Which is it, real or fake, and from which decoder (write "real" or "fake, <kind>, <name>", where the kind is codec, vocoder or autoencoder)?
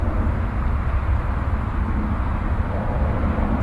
real